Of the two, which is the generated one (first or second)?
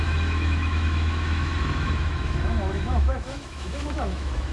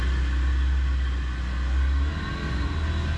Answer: first